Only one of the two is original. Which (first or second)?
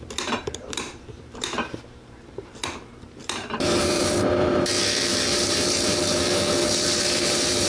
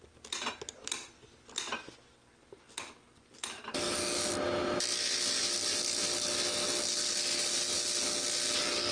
second